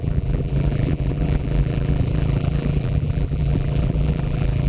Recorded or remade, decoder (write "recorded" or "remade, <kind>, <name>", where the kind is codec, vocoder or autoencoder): remade, vocoder, BigVGAN v2